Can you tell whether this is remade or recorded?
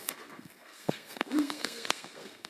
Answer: remade